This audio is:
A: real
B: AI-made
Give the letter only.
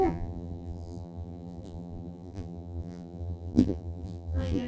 B